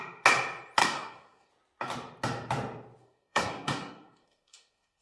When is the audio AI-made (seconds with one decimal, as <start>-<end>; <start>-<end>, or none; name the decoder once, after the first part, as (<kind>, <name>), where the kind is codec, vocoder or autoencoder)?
0.8-1.5 (codec, SNAC); 3.0-5.0